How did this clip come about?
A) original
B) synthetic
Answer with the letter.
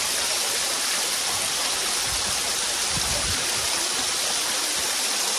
A